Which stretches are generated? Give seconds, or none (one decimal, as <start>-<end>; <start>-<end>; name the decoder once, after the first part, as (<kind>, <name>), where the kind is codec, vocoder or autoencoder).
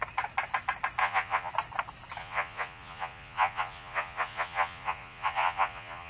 1.0-1.5 (vocoder, Vocos); 2.2-6.1